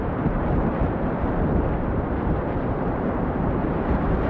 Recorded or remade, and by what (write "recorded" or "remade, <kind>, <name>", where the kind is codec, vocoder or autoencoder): remade, vocoder, BigVGAN v2